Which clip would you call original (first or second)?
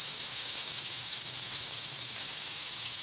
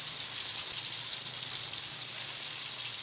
second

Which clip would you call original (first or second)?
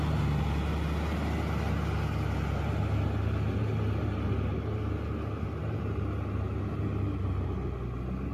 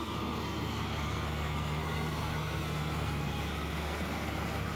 first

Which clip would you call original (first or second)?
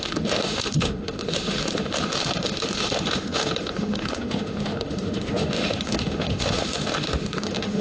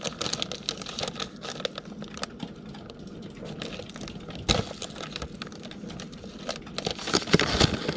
second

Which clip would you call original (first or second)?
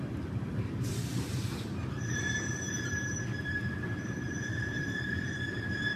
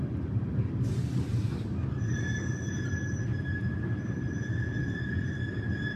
second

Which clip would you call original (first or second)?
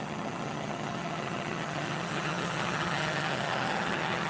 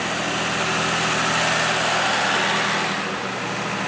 second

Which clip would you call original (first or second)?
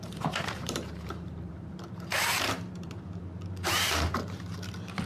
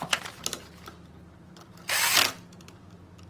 second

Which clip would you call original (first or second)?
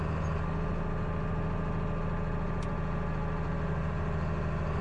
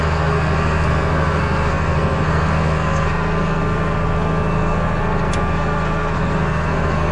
first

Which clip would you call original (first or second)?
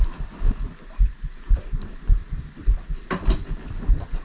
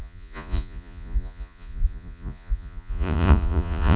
first